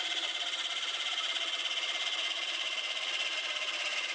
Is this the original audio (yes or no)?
yes